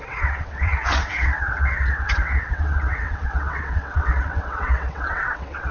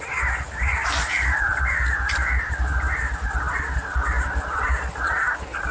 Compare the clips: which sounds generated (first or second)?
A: first